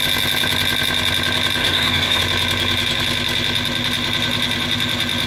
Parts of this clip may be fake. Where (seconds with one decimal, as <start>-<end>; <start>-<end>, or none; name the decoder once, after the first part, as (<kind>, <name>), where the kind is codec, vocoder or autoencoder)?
1.6-2.2 (codec, DAC)